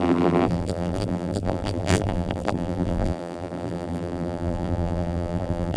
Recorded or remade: remade